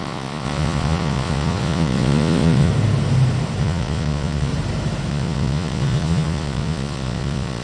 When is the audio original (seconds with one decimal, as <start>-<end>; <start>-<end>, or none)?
2.7-3.6; 4.5-5.1